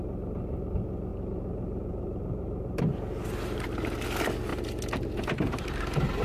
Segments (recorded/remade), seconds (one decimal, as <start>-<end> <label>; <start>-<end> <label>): 0.0-1.1 recorded; 1.1-2.8 remade; 2.8-6.2 recorded